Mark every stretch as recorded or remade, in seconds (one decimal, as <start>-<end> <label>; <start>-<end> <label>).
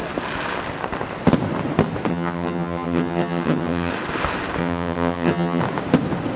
0.0-2.1 recorded; 2.1-3.9 remade; 3.9-4.6 recorded; 4.6-5.6 remade; 5.6-6.4 recorded